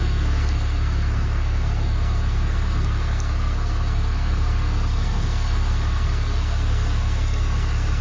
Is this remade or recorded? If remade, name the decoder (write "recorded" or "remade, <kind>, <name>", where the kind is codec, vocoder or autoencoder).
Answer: remade, codec, SNAC